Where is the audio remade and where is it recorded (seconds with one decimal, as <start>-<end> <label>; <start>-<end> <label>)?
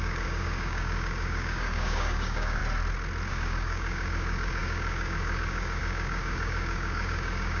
0.0-2.6 remade; 2.6-3.3 recorded; 3.3-7.6 remade